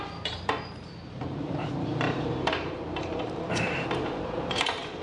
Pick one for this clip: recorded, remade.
remade